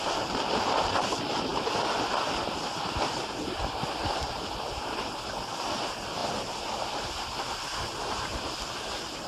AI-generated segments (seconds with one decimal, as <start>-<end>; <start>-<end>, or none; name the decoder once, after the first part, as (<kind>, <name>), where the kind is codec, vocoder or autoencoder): 0.0-6.2 (vocoder, BigVGAN v2); 8.1-9.3